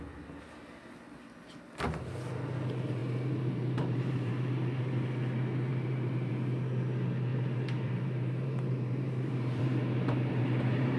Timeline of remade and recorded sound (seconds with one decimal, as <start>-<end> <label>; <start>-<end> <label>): 0.0-3.0 recorded; 3.0-4.3 remade; 4.3-5.7 recorded; 5.7-6.3 remade; 6.3-7.3 recorded; 7.3-11.0 remade